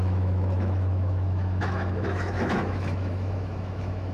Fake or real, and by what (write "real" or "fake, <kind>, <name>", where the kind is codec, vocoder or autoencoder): fake, autoencoder, DAC-VAE